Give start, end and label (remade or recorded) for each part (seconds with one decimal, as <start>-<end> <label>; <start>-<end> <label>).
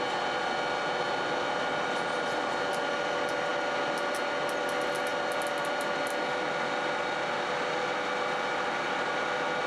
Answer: 0.0-9.7 recorded